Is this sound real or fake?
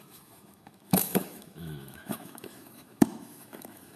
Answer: fake